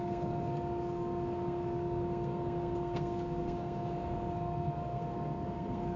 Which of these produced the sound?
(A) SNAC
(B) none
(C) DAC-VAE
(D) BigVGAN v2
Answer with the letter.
A